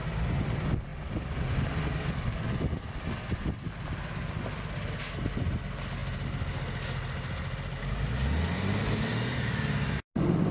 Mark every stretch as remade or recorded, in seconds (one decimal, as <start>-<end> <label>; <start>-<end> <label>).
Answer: 0.0-10.5 recorded